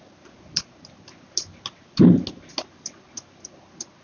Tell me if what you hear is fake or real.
real